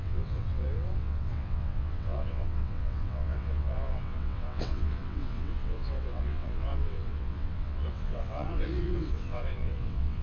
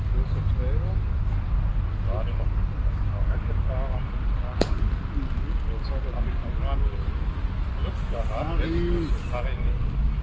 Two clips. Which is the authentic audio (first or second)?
second